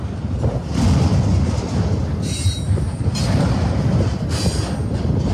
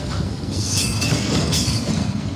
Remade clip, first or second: second